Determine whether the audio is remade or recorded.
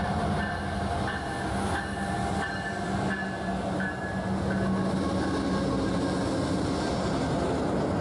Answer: recorded